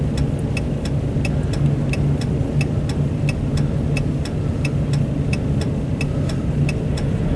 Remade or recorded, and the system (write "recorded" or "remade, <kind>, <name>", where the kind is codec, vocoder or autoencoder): recorded